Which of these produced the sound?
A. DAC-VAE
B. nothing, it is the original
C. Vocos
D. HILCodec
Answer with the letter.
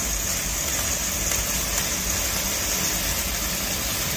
B